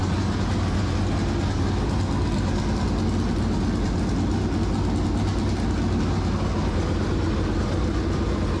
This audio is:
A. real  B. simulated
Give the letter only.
A